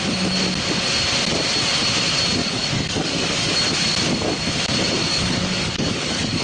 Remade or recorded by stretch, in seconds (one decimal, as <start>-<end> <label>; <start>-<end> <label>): 0.0-2.4 recorded; 2.4-3.5 remade; 3.5-5.0 recorded; 5.0-6.4 remade

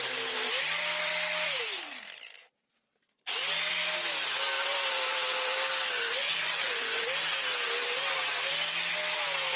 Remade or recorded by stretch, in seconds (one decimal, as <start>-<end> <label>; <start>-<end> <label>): 0.0-6.2 recorded; 6.2-7.0 remade; 7.0-9.6 recorded

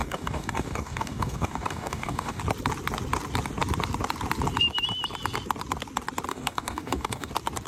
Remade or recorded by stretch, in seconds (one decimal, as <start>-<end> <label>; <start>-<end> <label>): 0.0-2.4 remade; 2.4-6.3 recorded; 6.3-7.3 remade; 7.3-7.7 recorded

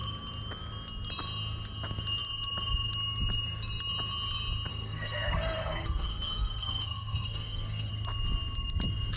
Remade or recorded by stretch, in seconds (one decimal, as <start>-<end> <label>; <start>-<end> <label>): 0.0-4.7 recorded; 4.7-7.9 remade; 7.9-9.2 recorded

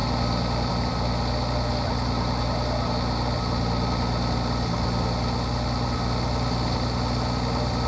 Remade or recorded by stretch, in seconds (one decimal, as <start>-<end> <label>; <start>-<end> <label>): 0.0-7.9 recorded

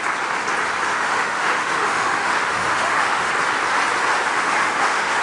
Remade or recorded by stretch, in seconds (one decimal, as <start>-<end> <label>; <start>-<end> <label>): 0.0-0.9 recorded; 0.9-3.3 remade; 3.3-4.3 recorded; 4.3-5.2 remade

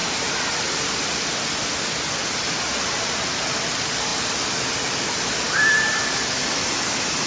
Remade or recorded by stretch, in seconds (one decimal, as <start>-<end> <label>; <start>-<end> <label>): 0.0-0.5 remade; 0.5-7.3 recorded